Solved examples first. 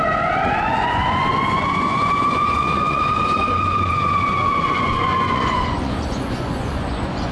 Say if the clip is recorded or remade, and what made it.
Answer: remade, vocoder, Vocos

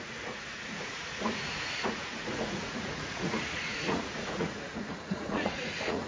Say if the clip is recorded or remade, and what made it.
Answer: remade, vocoder, Vocos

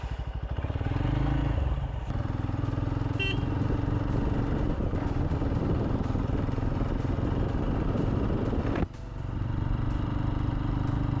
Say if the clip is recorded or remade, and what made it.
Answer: recorded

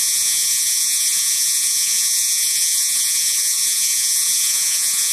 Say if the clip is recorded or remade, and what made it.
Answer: remade, vocoder, Vocos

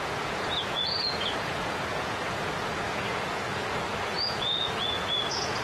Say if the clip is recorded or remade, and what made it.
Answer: remade, vocoder, Vocos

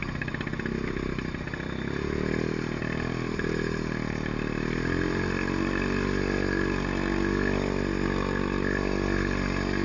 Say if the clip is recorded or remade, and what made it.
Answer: recorded